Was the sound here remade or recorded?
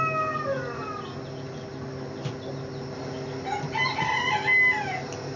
recorded